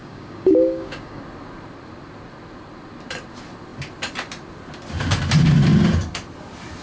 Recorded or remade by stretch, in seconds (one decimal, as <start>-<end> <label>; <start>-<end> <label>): 0.0-1.2 remade; 1.2-6.8 recorded